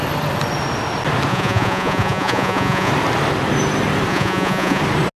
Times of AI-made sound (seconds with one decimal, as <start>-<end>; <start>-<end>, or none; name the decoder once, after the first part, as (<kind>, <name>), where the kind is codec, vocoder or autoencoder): 1.3-2.9 (vocoder, Vocos); 4.1-4.8